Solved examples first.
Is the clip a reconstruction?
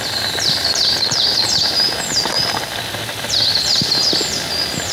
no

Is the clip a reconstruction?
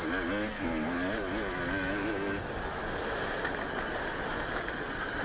no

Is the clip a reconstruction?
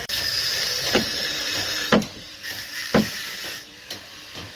yes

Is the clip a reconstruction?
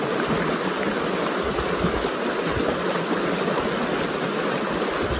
no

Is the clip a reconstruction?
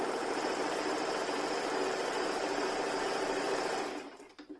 yes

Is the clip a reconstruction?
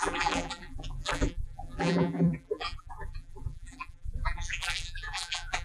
yes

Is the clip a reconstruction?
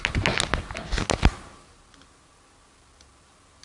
no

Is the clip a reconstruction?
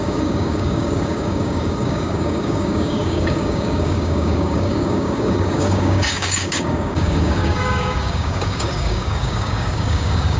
yes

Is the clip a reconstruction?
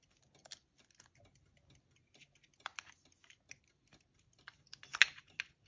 no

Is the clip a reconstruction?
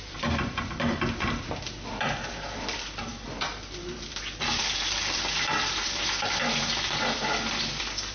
yes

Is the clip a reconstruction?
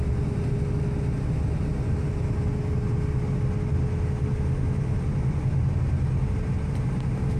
no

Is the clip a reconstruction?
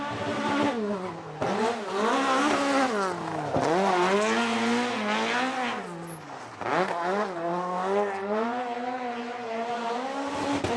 no